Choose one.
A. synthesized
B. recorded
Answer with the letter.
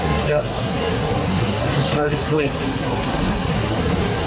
A